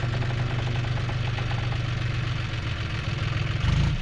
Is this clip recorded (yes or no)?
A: yes